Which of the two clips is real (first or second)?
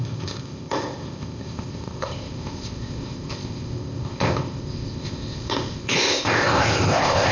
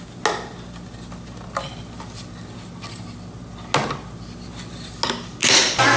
second